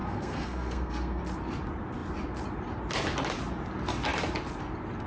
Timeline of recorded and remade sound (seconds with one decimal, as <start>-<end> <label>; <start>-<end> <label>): 0.0-1.2 remade; 1.2-5.1 recorded